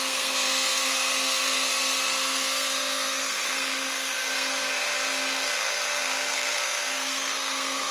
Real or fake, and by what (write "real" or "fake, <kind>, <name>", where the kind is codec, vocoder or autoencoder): fake, codec, SNAC